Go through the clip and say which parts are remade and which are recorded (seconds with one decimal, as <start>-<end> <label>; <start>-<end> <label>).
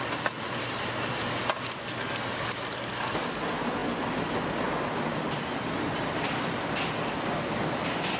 0.0-8.2 recorded